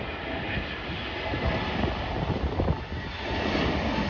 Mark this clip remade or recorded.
recorded